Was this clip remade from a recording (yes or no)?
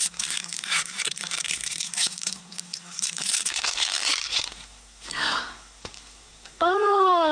yes